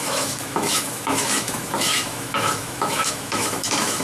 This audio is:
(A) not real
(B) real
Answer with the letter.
A